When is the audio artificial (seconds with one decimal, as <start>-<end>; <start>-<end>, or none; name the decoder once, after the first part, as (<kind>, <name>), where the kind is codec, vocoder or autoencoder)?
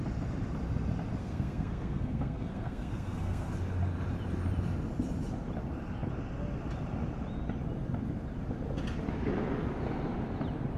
1.2-3.5 (codec, SNAC)